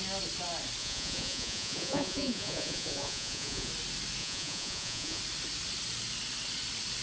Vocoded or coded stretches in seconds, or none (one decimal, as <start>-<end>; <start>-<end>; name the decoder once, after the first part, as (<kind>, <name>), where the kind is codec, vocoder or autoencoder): 0.8-3.7 (vocoder, Vocos); 4.2-5.2